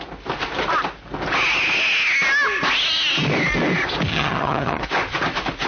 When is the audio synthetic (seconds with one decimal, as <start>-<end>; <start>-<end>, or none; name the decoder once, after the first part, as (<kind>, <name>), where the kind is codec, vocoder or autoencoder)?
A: 4.1-4.8 (vocoder, HiFi-GAN)